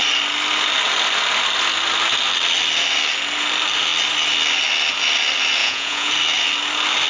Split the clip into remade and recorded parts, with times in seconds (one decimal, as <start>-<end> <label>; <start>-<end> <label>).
0.0-5.6 recorded; 5.6-6.1 remade; 6.1-7.1 recorded